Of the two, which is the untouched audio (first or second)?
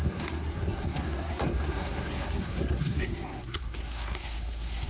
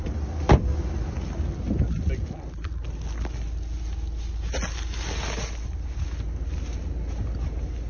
second